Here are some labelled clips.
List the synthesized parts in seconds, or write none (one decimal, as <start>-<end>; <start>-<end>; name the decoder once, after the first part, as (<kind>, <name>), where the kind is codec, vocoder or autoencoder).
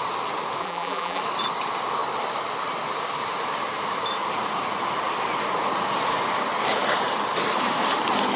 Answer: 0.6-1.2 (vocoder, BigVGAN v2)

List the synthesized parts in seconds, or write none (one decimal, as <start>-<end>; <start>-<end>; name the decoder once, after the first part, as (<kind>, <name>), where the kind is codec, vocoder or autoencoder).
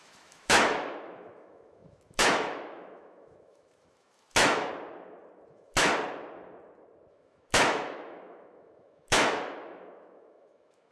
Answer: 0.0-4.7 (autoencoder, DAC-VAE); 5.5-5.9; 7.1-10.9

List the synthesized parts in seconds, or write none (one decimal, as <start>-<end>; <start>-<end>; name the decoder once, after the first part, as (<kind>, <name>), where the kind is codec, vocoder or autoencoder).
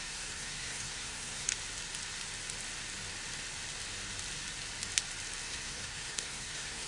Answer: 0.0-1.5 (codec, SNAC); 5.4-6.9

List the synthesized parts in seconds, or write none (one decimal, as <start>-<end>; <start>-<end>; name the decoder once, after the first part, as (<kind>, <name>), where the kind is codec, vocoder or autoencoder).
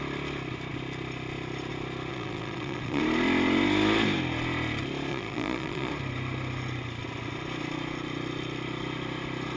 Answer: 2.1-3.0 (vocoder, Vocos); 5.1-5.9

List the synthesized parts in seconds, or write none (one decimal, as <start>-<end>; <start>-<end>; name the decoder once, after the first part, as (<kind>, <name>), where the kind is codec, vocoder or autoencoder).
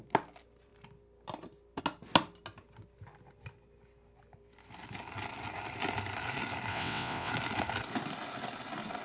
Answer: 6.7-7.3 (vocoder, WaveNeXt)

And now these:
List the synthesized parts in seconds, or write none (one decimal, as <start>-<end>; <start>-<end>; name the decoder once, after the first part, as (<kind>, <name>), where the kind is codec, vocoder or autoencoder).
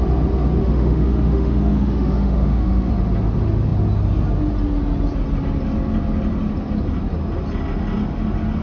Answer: 0.6-2.9 (autoencoder, DAC-VAE)